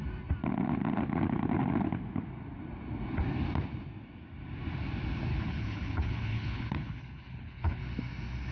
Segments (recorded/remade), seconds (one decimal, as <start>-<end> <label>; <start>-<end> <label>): 0.0-5.3 recorded; 5.3-7.8 remade; 7.8-8.5 recorded